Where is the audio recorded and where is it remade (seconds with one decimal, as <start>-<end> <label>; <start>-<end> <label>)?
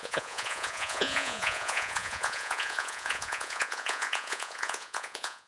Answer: 0.0-5.5 remade